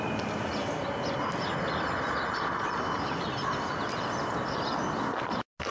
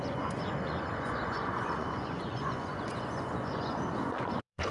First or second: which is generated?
second